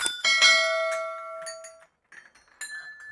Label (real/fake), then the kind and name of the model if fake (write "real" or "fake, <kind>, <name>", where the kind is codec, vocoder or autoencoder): real